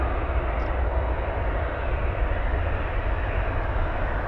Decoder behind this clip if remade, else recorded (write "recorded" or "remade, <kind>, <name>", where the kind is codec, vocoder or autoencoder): recorded